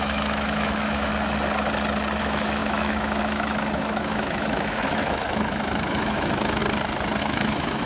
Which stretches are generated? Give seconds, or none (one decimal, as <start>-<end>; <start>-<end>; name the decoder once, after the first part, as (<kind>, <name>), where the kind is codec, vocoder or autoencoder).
0.0-1.1 (autoencoder, DAC-VAE); 2.2-6.6; 7.2-7.9